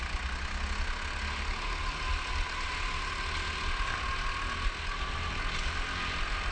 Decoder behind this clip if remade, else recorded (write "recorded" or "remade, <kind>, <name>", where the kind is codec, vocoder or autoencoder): recorded